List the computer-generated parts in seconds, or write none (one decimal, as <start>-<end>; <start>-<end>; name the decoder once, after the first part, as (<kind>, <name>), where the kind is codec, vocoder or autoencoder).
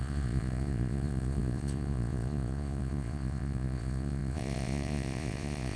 0.0-5.8 (vocoder, Vocos)